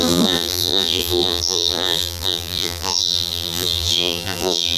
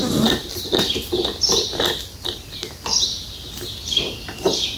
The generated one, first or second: first